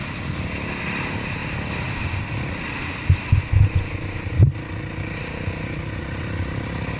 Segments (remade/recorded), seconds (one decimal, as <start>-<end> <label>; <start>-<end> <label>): 0.0-7.0 recorded